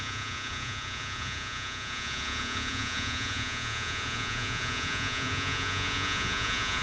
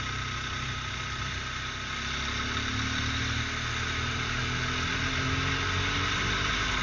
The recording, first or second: second